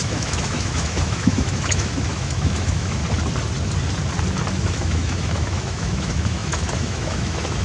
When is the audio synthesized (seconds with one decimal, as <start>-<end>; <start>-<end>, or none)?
0.0-3.0; 4.5-7.6